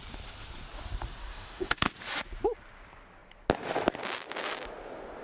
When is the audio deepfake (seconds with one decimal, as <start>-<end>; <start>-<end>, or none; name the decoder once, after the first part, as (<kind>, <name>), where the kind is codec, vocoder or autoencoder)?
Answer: 1.3-1.9 (autoencoder, DAC-VAE)